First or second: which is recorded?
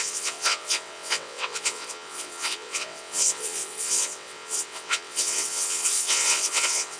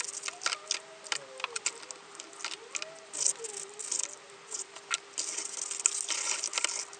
second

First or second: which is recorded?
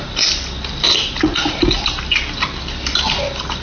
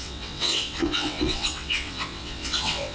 first